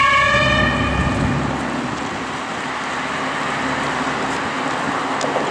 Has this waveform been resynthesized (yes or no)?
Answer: no